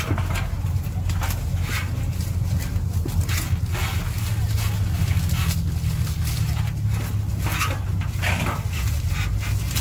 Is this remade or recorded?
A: recorded